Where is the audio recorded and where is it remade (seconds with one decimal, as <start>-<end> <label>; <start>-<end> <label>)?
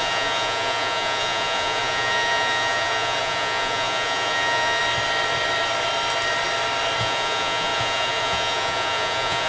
0.0-4.8 remade; 4.8-7.0 recorded; 7.0-9.5 remade